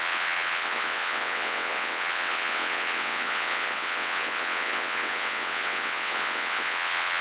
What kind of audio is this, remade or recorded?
remade